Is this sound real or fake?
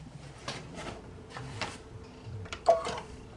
fake